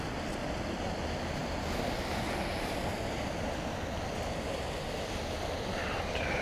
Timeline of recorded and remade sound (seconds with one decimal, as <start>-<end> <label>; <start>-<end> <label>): 0.0-6.4 recorded